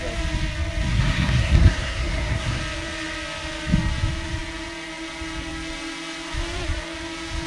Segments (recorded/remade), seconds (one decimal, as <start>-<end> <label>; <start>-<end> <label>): 0.0-0.9 recorded; 0.9-2.6 remade; 2.6-7.5 recorded